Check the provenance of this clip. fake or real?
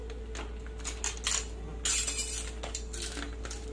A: real